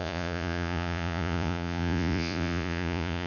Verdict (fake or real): fake